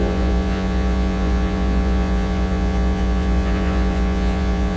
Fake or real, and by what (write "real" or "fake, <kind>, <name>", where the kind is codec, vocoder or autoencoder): fake, vocoder, Vocos